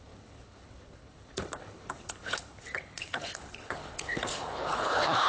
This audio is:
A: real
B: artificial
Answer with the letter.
B